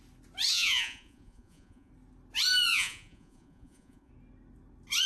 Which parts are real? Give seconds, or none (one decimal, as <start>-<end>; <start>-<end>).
0.0-0.5; 1.9-2.7; 4.1-5.1